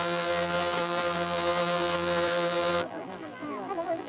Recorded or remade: remade